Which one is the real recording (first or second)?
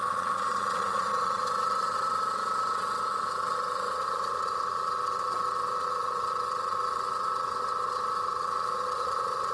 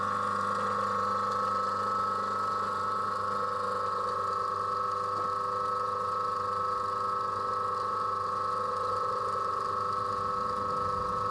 second